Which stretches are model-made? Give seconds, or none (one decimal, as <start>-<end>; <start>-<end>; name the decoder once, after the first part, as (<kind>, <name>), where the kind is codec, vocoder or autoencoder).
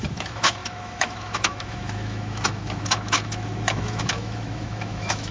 0.0-5.3 (autoencoder, DAC-VAE)